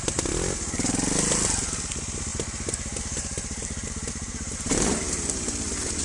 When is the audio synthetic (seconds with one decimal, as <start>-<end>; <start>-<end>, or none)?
2.3-6.0